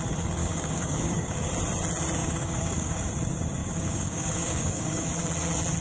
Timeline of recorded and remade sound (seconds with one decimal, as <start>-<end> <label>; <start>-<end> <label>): 0.0-0.4 recorded; 0.4-1.5 remade; 1.5-2.2 recorded; 2.2-3.1 remade; 3.1-3.6 recorded; 3.6-5.1 remade; 5.1-5.8 recorded